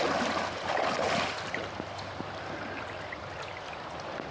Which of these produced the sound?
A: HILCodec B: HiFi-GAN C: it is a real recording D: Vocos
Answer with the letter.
C